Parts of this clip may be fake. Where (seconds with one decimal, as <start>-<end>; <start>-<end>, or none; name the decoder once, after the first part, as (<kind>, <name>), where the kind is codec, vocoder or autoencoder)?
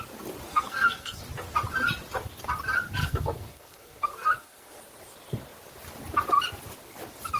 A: 0.5-1.2 (codec, SNAC); 3.0-4.8